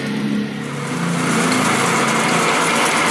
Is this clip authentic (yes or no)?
yes